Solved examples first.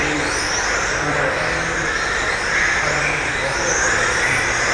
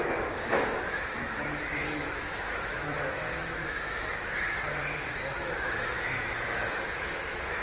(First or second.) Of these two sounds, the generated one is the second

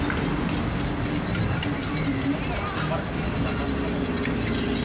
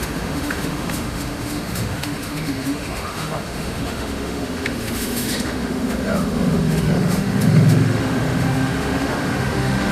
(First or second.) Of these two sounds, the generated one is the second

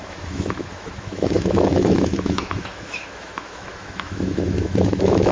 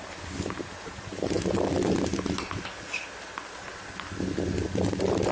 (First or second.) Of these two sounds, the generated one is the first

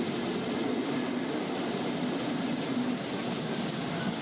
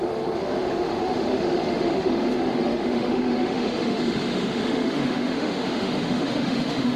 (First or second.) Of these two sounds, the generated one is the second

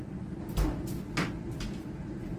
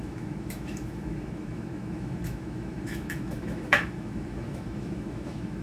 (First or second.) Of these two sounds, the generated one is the second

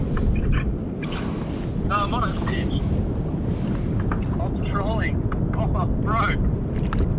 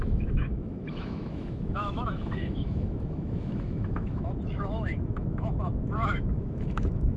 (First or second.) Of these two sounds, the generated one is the second